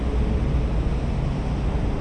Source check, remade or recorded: recorded